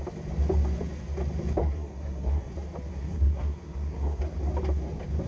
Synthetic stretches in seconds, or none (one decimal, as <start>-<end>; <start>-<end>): 1.6-2.5; 2.9-4.2